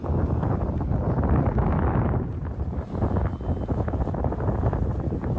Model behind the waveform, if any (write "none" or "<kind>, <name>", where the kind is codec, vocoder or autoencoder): none